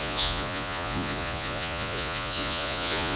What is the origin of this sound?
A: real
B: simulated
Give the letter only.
B